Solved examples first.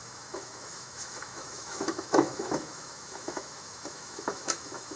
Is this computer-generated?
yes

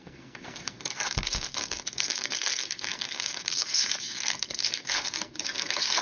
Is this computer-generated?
yes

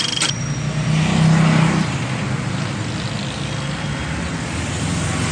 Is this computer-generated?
no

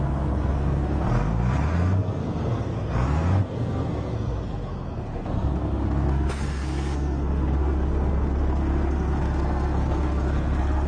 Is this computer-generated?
yes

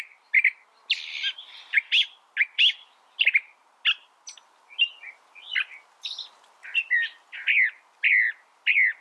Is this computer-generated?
no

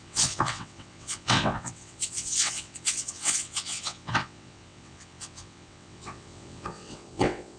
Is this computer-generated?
yes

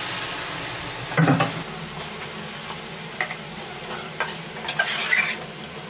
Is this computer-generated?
no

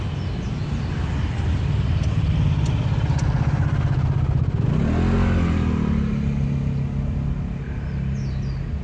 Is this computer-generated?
no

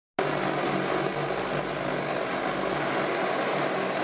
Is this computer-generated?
no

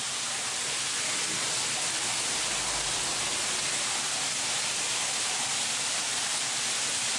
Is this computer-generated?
no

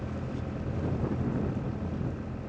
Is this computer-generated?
no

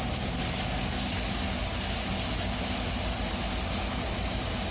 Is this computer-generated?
no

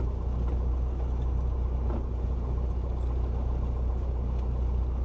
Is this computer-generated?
no